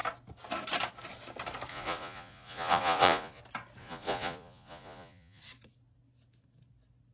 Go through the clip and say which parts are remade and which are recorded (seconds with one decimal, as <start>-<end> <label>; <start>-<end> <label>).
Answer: 0.0-1.7 recorded; 1.7-3.4 remade; 3.4-3.8 recorded; 3.8-5.4 remade; 5.4-7.1 recorded